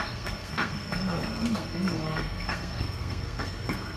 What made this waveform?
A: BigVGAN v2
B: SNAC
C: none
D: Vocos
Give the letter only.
B